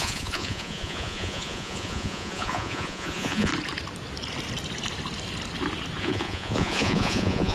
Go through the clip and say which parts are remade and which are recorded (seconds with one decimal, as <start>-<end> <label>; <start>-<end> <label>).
0.0-3.5 remade; 3.5-6.0 recorded; 6.0-7.5 remade